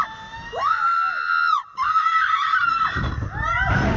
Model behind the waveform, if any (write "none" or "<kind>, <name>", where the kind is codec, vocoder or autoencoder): none